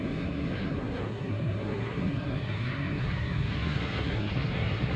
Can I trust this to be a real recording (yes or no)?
no